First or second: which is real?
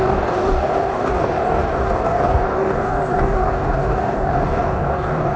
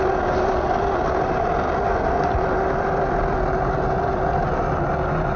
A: second